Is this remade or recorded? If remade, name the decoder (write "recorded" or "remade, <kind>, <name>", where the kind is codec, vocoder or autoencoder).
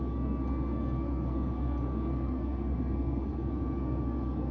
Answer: remade, codec, SNAC